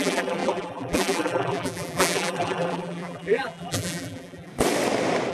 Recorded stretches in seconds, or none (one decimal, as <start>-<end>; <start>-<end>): 4.5-5.3